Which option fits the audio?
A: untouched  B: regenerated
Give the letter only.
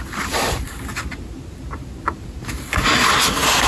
A